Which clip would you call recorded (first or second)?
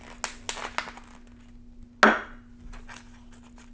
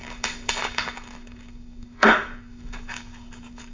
first